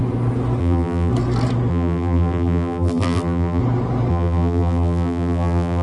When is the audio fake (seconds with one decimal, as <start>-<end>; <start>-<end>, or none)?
0.6-1.1; 1.7-3.6; 4.1-5.8